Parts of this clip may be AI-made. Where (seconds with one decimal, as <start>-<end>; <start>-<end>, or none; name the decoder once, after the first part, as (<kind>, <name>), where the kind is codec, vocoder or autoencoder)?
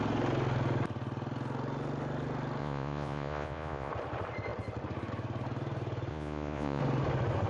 2.6-3.9 (vocoder, Vocos); 6.1-6.8